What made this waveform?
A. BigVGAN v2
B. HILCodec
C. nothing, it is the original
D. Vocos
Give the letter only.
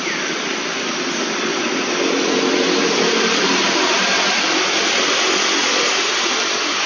C